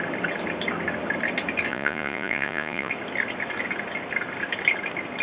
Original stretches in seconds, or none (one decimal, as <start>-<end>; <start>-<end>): 0.0-1.7; 2.9-5.2